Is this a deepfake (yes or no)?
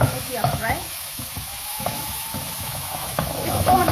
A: yes